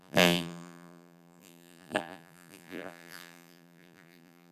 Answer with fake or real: fake